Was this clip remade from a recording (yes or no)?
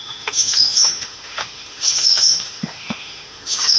yes